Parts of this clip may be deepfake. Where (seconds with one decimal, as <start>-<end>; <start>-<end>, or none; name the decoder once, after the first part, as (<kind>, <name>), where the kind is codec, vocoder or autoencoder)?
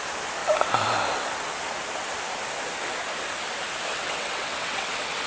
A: 3.9-5.3 (vocoder, WaveNeXt)